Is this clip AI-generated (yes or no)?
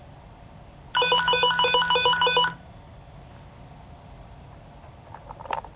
no